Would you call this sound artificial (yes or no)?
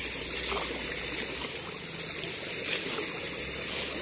no